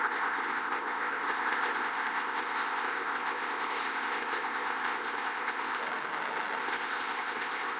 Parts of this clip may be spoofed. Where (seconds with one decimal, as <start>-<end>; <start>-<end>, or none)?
0.0-5.8; 6.6-7.8